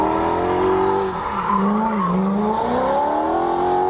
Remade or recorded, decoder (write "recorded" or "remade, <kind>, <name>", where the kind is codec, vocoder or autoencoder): recorded